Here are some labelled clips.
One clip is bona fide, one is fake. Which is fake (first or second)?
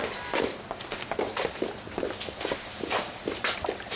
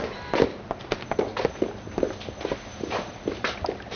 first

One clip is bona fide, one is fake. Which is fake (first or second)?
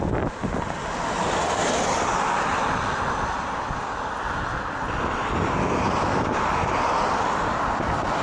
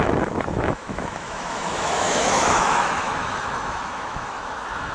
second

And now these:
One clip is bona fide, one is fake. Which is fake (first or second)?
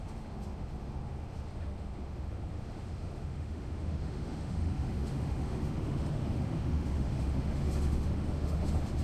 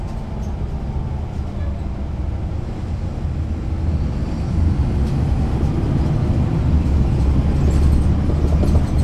first